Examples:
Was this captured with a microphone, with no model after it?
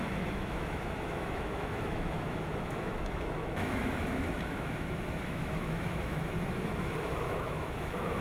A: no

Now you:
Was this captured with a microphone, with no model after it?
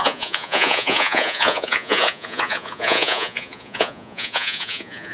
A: no